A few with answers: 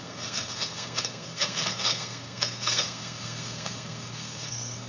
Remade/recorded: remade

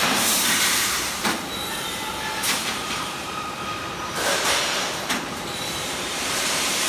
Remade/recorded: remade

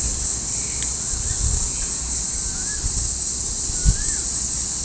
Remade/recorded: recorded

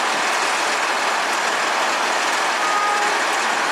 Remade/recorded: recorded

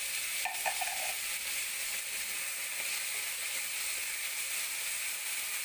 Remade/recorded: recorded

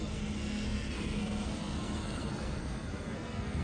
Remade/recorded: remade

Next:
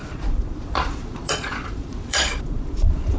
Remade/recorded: remade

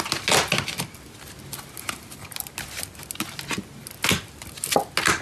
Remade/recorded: recorded